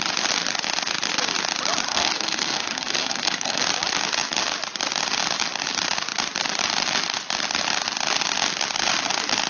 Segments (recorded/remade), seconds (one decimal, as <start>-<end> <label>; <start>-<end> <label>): 0.0-1.9 recorded; 1.9-3.6 remade; 3.6-9.5 recorded